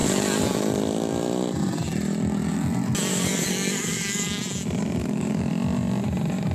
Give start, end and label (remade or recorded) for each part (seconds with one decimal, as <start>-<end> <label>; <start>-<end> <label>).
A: 0.0-3.1 recorded; 3.1-4.4 remade; 4.4-5.0 recorded; 5.0-5.5 remade; 5.5-6.5 recorded